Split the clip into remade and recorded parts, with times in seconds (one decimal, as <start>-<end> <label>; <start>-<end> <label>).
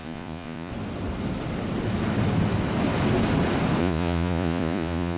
0.0-0.7 remade; 0.7-3.8 recorded; 3.8-5.2 remade